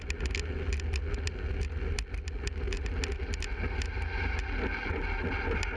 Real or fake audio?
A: real